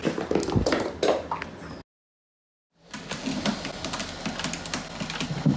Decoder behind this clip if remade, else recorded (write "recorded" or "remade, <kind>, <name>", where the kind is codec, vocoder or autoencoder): recorded